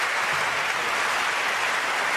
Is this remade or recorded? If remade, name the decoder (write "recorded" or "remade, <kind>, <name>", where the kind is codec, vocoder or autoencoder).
recorded